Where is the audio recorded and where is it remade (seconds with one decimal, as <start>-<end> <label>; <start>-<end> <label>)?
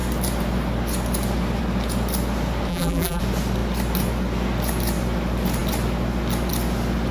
0.0-2.7 recorded; 2.7-3.2 remade; 3.2-7.1 recorded